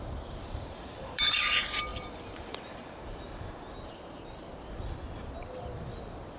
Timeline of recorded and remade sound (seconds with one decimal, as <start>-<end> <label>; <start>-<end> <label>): 0.0-4.5 remade; 4.5-6.4 recorded